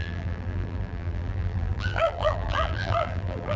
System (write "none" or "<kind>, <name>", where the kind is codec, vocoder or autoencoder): vocoder, BigVGAN v2